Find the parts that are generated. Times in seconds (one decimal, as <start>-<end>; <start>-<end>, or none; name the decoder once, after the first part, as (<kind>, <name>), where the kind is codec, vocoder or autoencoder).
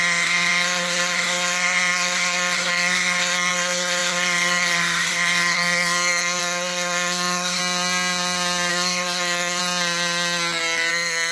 0.0-7.6 (codec, SNAC); 8.7-9.6; 10.9-11.3